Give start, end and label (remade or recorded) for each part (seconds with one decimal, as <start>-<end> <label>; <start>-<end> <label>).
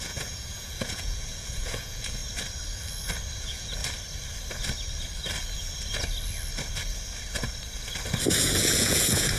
0.0-2.2 remade; 2.2-3.4 recorded; 3.4-3.8 remade; 3.8-8.3 recorded; 8.3-9.4 remade